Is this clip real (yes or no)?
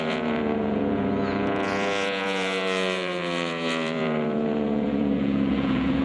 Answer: no